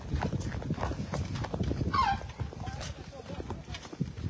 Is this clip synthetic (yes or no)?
no